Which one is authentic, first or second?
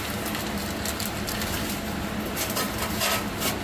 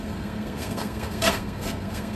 first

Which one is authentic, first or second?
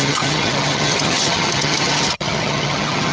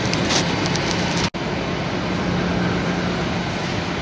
second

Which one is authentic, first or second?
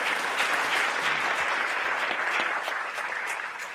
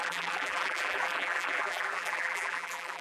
first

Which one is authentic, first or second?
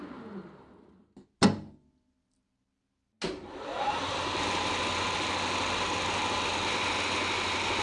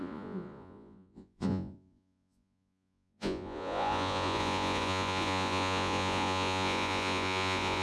first